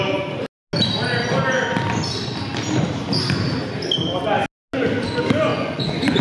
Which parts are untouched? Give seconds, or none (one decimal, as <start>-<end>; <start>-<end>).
0.0-5.5